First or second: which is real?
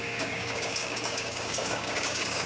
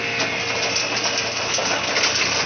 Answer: second